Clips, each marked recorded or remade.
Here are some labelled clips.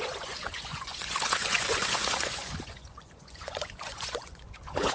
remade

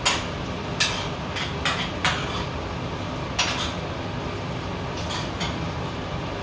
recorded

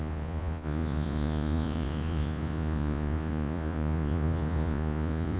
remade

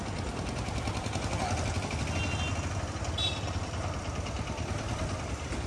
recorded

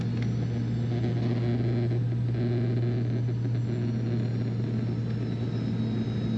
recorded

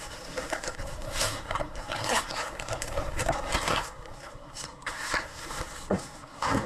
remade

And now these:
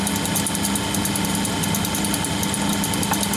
recorded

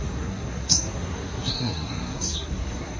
remade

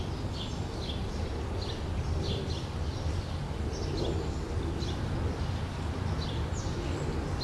recorded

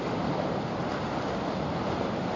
recorded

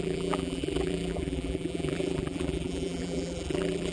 remade